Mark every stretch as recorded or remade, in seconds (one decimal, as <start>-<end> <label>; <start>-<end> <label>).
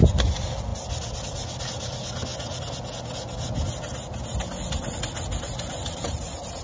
0.0-6.6 recorded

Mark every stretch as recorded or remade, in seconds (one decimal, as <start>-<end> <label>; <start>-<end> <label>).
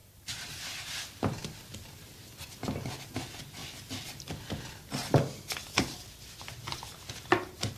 0.0-7.8 recorded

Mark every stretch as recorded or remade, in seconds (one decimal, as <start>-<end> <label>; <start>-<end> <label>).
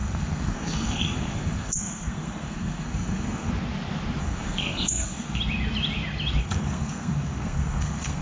0.0-3.5 remade; 3.5-4.2 recorded; 4.2-5.4 remade; 5.4-6.4 recorded; 6.4-8.2 remade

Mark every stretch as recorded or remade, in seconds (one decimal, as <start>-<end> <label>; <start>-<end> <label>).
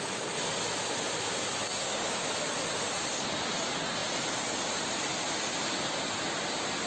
0.0-1.6 recorded; 1.6-2.1 remade; 2.1-6.9 recorded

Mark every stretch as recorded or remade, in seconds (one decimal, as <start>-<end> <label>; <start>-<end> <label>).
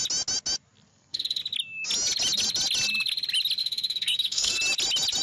0.0-0.9 recorded; 0.9-1.4 remade; 1.4-3.6 recorded; 3.6-4.6 remade; 4.6-5.2 recorded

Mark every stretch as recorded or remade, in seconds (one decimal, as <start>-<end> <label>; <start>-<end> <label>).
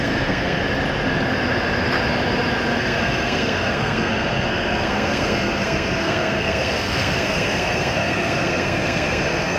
0.0-0.6 remade; 0.6-2.8 recorded; 2.8-9.6 remade